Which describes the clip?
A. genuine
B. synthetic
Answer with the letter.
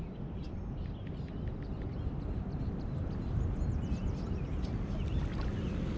A